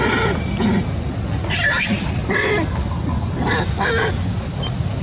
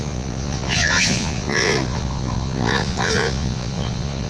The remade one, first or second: second